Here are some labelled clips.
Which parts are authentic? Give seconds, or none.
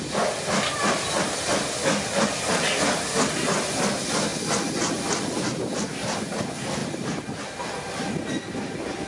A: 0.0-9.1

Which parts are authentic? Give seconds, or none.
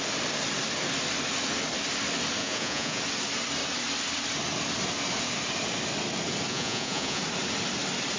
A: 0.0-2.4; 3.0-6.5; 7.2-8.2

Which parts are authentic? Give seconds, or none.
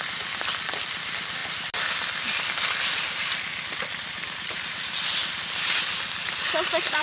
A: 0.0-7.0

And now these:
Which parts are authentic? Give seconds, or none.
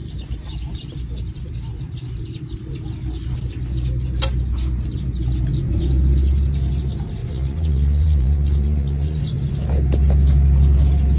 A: 0.0-7.2; 9.2-11.2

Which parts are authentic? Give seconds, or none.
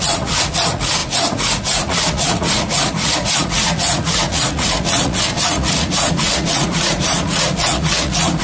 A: none